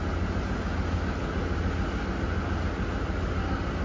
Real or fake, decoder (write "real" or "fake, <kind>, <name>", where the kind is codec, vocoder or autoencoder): real